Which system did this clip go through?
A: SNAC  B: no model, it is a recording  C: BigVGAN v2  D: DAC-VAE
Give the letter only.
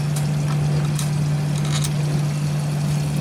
B